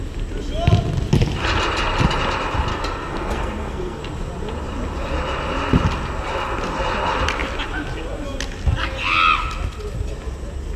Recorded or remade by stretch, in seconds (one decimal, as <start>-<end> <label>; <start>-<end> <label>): 0.0-2.7 recorded; 2.7-4.0 remade; 4.0-10.8 recorded